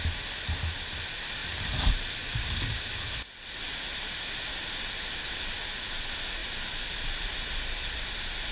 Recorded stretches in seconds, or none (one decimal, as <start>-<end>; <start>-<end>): 0.0-1.4; 2.6-8.5